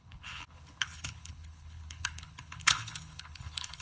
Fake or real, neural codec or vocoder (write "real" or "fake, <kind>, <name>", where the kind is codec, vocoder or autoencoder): fake, codec, HILCodec